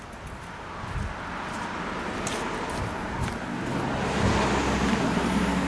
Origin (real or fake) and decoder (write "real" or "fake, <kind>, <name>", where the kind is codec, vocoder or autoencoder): real